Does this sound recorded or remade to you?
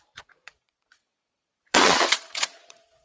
remade